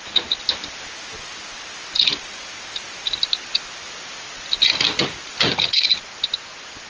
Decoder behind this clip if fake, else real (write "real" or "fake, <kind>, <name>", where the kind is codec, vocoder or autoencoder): real